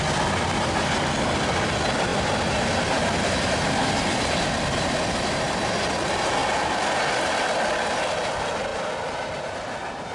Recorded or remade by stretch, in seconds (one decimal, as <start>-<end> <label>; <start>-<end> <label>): 0.0-10.1 recorded